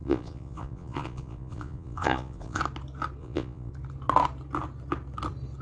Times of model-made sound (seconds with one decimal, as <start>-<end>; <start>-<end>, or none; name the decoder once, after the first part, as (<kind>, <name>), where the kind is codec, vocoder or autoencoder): 0.0-2.6 (vocoder, Vocos); 3.2-3.7